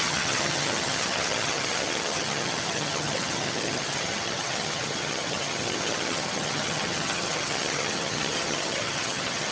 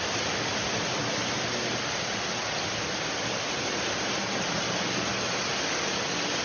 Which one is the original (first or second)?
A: second